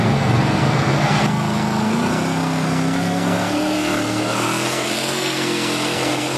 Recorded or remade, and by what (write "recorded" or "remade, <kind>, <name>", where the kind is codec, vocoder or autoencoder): remade, codec, SNAC